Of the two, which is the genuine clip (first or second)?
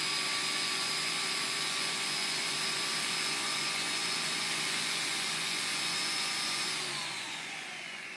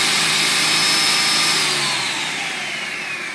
second